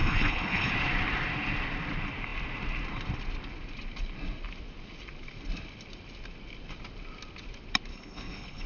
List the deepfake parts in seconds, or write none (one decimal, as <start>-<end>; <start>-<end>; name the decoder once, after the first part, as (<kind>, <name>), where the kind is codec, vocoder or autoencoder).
0.0-0.7 (codec, HILCodec); 7.9-8.7